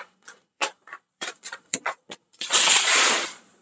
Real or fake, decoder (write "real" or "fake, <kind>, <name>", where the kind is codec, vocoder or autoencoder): fake, vocoder, Vocos